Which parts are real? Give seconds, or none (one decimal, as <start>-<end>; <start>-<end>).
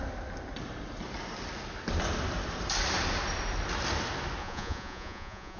0.0-4.4